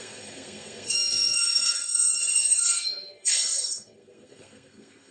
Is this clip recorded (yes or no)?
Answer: no